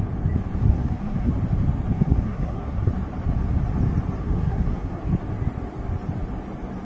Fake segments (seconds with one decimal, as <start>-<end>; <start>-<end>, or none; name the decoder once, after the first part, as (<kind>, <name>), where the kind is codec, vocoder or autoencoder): 0.6-1.3 (codec, SNAC); 1.9-2.9; 4.2-5.0